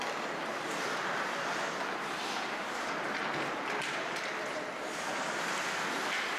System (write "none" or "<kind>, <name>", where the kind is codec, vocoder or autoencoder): none